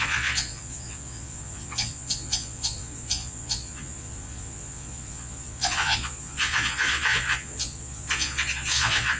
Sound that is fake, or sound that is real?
fake